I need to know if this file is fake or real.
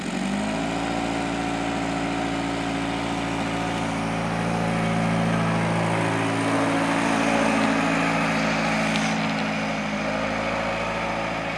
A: real